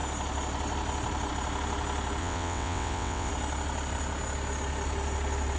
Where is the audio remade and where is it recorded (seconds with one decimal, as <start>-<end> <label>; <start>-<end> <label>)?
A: 0.0-2.2 recorded; 2.2-3.3 remade; 3.3-5.6 recorded